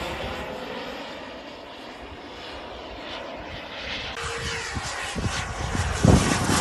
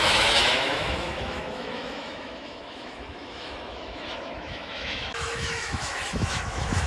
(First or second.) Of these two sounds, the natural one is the first